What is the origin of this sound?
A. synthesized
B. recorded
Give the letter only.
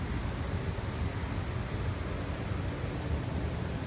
B